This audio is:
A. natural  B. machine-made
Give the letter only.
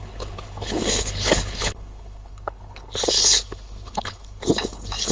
B